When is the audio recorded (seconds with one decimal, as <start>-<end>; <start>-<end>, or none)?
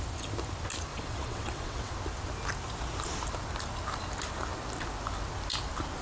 0.0-0.9; 1.9-6.0